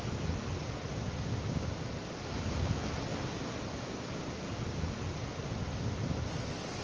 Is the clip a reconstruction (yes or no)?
no